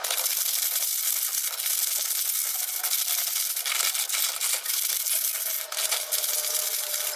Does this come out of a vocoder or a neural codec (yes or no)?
no